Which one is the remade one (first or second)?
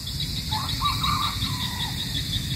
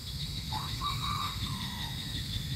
second